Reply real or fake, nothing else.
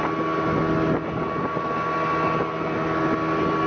real